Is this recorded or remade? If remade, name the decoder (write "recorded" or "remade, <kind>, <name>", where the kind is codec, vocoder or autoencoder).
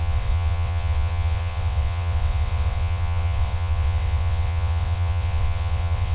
remade, vocoder, WaveNeXt